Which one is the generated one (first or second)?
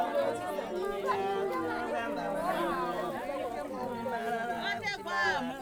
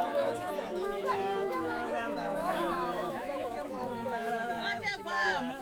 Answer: second